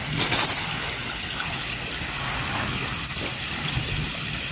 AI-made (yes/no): no